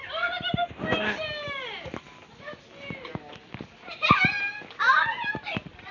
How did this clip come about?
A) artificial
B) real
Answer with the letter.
B